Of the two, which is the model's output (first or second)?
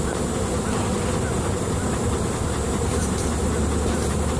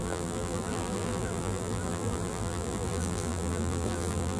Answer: second